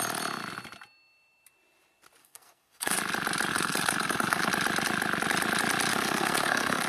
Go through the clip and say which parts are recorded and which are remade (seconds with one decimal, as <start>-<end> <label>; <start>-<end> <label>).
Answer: 0.0-2.2 recorded; 2.2-3.0 remade; 3.0-3.5 recorded; 3.5-4.5 remade; 4.5-5.9 recorded; 5.9-6.9 remade